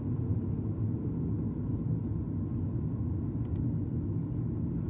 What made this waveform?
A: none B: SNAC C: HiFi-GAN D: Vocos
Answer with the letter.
A